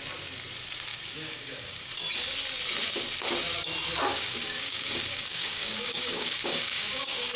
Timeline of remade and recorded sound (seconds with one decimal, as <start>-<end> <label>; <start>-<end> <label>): 0.0-0.9 recorded; 0.9-1.9 remade; 1.9-4.1 recorded; 4.1-7.4 remade